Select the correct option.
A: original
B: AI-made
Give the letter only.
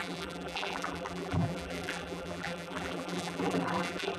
B